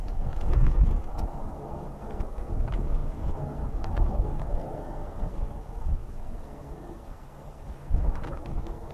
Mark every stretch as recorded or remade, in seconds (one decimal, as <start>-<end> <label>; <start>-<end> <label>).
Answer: 0.0-8.9 remade